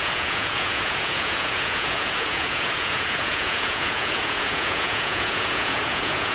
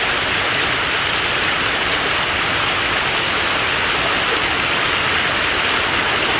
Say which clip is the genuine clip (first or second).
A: second